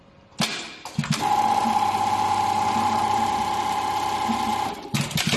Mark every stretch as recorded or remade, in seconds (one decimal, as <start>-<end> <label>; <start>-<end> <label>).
0.0-5.4 recorded

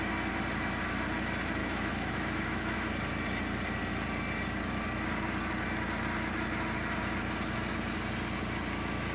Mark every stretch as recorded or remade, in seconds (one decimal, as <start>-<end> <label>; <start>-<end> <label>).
0.0-1.6 recorded; 1.6-2.9 remade; 2.9-9.1 recorded

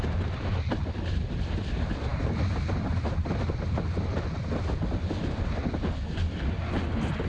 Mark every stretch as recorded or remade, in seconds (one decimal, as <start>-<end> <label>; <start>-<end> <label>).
0.0-7.3 recorded

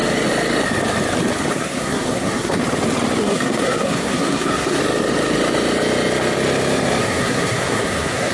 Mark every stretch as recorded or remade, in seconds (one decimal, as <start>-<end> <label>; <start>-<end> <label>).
0.0-1.5 recorded; 1.5-2.6 remade; 2.6-3.2 recorded; 3.2-4.8 remade; 4.8-7.0 recorded; 7.0-8.3 remade

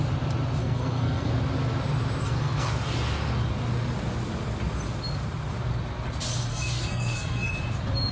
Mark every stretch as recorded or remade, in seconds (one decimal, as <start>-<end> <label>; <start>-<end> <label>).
0.0-0.6 recorded; 0.6-1.3 remade; 1.3-2.2 recorded; 2.2-2.7 remade; 2.7-6.5 recorded; 6.5-7.5 remade; 7.5-8.1 recorded